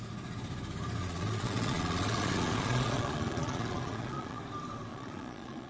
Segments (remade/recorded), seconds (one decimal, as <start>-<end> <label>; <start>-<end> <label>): 0.0-1.0 recorded; 1.0-4.4 remade; 4.4-4.9 recorded; 4.9-5.7 remade